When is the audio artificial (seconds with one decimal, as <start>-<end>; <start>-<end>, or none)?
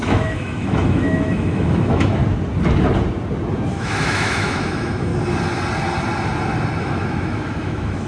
0.0-2.2; 3.7-5.1; 6.8-8.1